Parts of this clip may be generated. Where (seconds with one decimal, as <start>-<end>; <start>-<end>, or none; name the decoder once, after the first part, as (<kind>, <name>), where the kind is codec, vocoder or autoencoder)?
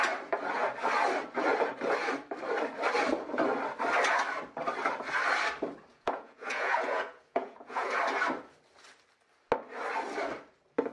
5.9-8.0 (vocoder, Vocos)